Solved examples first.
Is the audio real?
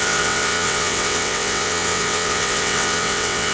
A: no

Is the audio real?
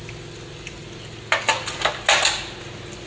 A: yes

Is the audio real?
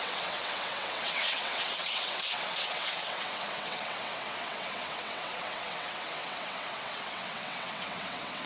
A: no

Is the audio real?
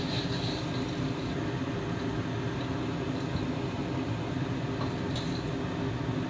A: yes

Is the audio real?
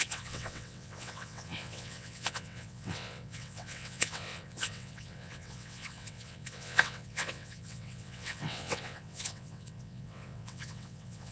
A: no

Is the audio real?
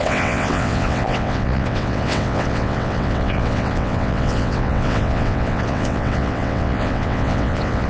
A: no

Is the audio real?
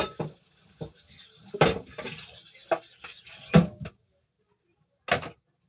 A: yes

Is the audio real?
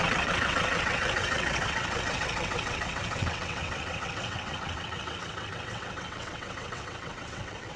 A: no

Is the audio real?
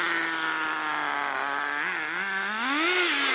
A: yes